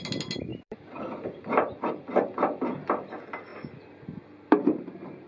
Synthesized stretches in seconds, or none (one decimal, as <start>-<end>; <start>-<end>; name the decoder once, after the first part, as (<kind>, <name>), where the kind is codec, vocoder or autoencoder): 0.5-1.5 (vocoder, BigVGAN v2)